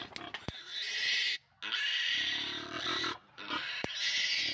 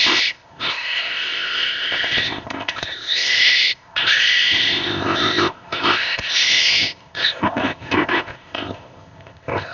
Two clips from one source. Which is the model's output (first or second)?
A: second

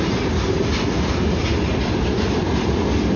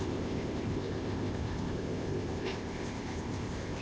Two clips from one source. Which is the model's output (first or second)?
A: second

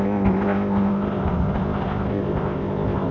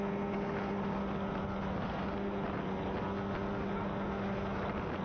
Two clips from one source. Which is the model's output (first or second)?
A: first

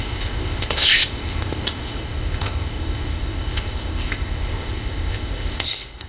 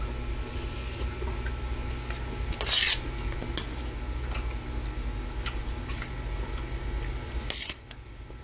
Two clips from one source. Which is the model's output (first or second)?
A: first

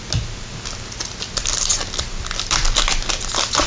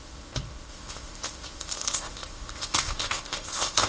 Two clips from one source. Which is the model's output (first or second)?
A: second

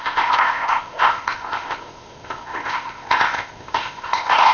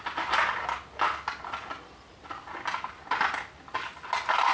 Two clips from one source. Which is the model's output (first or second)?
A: first